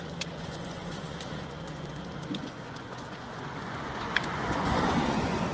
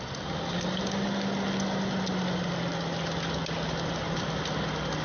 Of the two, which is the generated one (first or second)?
first